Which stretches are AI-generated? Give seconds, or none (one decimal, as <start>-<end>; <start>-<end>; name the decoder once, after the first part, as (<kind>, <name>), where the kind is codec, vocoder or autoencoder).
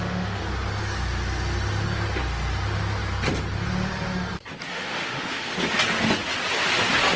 0.0-0.4 (autoencoder, DAC-VAE); 4.7-5.5